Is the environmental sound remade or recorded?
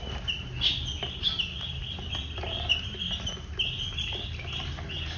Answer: recorded